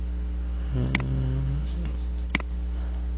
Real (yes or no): yes